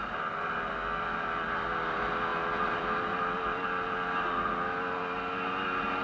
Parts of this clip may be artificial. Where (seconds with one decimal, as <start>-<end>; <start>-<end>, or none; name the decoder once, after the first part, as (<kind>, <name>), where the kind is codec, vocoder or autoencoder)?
none